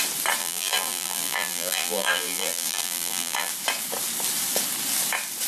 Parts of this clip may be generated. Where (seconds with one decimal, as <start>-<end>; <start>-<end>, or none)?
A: 0.4-3.5